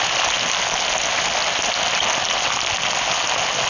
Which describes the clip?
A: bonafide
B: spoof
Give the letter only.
A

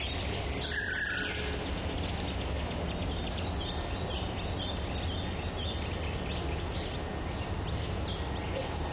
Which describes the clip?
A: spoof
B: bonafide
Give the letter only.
B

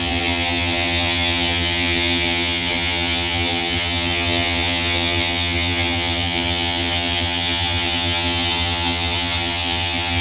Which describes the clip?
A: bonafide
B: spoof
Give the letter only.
B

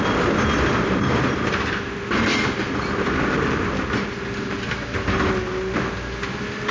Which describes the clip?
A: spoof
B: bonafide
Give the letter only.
B